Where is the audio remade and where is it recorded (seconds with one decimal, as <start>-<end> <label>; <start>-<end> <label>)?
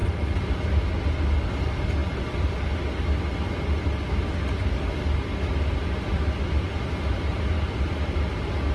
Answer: 0.0-8.7 recorded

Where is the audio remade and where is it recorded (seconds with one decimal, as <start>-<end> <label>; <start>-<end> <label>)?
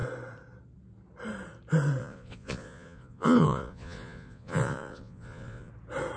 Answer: 0.0-2.0 recorded; 2.0-5.7 remade; 5.7-6.2 recorded